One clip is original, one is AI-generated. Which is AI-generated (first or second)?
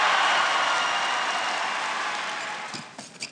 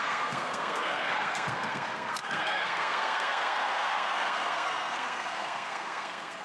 second